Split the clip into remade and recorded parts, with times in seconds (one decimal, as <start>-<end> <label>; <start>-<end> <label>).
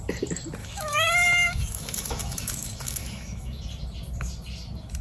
0.0-0.6 recorded; 0.6-3.6 remade; 3.6-5.0 recorded